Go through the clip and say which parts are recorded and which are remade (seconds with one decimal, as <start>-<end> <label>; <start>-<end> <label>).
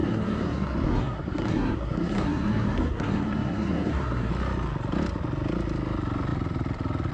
0.0-4.3 remade; 4.3-7.1 recorded